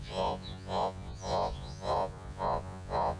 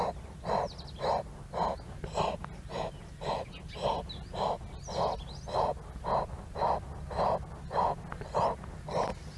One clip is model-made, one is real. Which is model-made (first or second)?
first